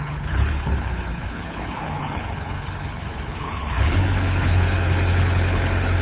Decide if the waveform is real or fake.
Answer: fake